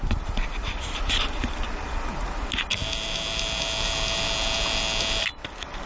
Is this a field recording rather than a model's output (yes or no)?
yes